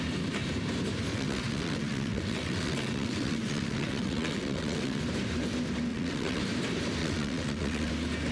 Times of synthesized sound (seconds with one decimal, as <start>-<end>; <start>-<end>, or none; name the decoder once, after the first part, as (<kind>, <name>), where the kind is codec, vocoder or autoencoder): 1.1-5.0 (vocoder, WaveNeXt); 5.9-6.4; 7.0-7.9